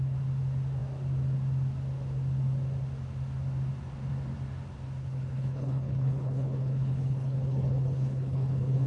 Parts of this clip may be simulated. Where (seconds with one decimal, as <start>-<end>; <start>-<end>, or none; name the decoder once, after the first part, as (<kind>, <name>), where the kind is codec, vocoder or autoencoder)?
5.0-8.9 (codec, HILCodec)